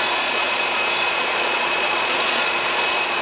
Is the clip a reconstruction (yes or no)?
yes